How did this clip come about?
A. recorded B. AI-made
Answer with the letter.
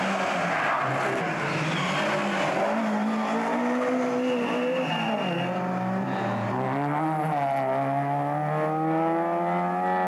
A